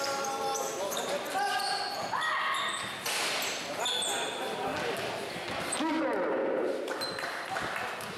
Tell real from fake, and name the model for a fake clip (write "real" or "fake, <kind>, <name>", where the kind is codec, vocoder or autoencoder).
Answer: real